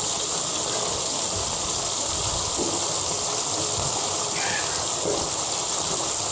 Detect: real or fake real